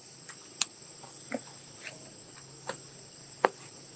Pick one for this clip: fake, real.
real